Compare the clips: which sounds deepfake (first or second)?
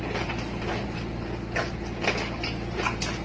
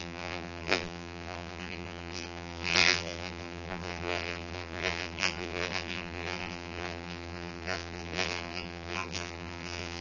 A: second